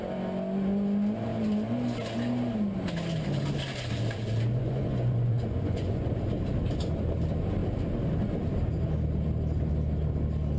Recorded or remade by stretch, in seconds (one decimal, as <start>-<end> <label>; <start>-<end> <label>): 0.0-4.6 recorded; 4.6-6.1 remade; 6.1-10.6 recorded